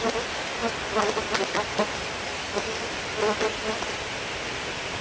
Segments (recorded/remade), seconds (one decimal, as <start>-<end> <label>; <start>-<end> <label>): 0.0-5.0 recorded